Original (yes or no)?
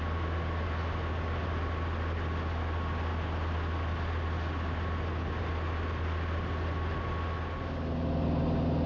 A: yes